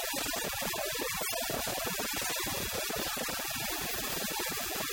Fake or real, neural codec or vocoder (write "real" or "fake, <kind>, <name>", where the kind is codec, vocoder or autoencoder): real